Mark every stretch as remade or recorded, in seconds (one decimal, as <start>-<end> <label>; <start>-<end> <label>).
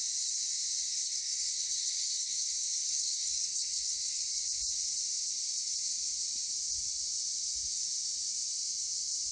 0.0-0.9 recorded; 0.9-4.2 remade; 4.2-9.3 recorded